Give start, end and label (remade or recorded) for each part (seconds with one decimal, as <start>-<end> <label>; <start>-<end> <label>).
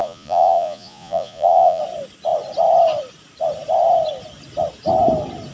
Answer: 0.0-1.8 remade; 1.8-5.5 recorded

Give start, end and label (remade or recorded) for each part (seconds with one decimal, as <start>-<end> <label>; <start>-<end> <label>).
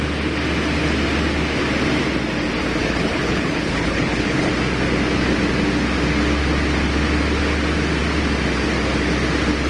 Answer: 0.0-2.8 recorded; 2.8-4.5 remade; 4.5-9.7 recorded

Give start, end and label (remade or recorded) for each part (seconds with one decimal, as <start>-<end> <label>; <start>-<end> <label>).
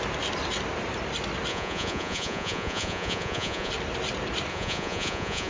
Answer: 0.0-1.5 recorded; 1.5-3.7 remade; 3.7-4.5 recorded; 4.5-5.5 remade